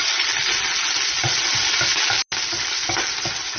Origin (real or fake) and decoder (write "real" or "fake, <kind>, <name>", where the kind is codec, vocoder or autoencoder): real